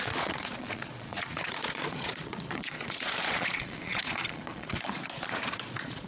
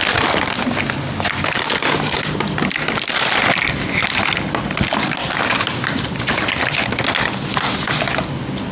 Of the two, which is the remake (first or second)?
first